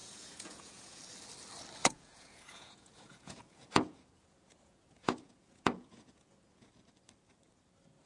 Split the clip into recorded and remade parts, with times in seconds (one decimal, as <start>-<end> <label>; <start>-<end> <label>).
0.0-1.0 remade; 1.0-1.8 recorded; 1.8-6.7 remade; 6.7-8.1 recorded